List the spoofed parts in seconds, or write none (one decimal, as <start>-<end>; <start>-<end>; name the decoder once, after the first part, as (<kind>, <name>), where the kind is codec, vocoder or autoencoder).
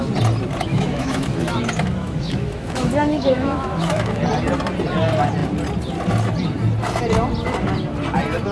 0.7-4.2 (autoencoder, DAC-VAE)